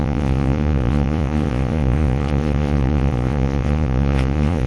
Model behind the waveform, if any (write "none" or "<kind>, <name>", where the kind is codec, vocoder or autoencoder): vocoder, Vocos